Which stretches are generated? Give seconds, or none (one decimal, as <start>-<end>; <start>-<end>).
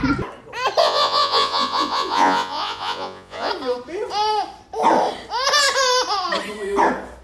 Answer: 0.8-3.5